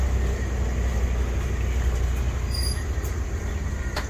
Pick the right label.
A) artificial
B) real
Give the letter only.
B